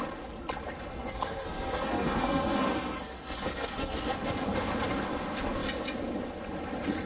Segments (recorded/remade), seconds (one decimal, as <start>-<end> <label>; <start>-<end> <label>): 0.0-0.9 recorded; 0.9-4.7 remade; 4.7-7.1 recorded